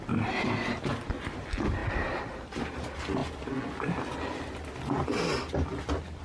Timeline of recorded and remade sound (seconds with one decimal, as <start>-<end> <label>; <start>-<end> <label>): 0.0-1.8 recorded; 1.8-2.7 remade; 2.7-6.2 recorded